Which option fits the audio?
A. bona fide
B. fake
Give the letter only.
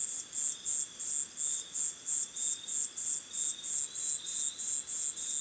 A